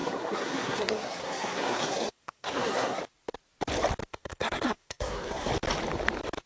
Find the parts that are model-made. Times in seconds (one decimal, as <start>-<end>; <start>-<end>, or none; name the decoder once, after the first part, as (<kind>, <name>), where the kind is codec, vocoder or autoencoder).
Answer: 0.0-3.0 (codec, SNAC); 4.1-5.5